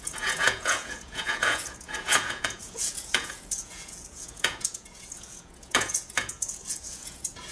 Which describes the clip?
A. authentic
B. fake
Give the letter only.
B